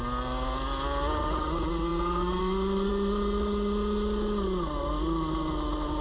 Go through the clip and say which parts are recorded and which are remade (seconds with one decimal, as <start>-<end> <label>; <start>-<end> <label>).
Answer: 0.0-6.0 recorded